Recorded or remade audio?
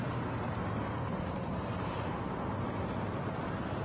recorded